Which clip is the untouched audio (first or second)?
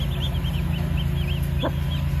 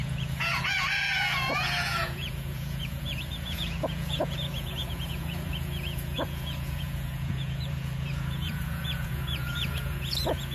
first